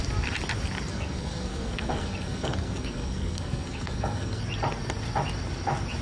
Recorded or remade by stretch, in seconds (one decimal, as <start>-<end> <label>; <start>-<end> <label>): 0.0-0.9 recorded; 0.9-4.4 remade; 4.4-6.0 recorded